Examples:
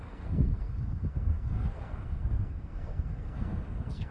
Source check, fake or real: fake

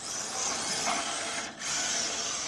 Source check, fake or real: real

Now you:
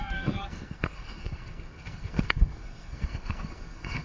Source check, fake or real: fake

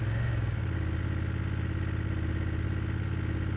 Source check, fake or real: real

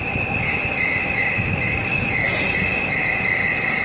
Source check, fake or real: real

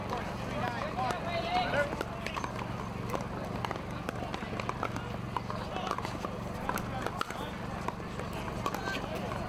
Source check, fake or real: real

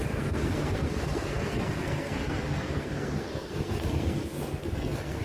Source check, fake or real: fake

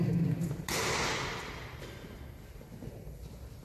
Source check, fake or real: real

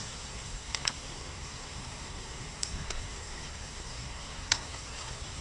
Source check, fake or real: fake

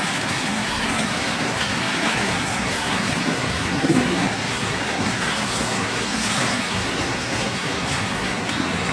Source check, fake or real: fake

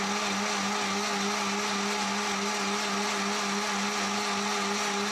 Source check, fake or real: real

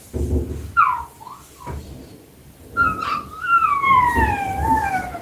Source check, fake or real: real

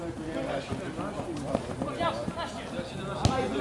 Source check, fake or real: real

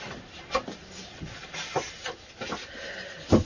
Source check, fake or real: real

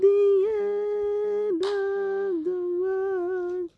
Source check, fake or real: real